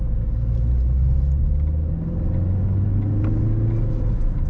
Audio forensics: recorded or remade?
recorded